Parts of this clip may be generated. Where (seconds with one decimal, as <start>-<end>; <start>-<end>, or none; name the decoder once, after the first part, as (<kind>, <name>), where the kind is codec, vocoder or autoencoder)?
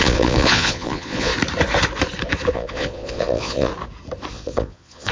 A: 0.0-1.3 (vocoder, Vocos); 2.5-3.7; 4.3-5.1